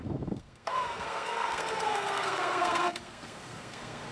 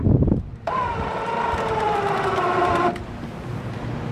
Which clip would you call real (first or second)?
second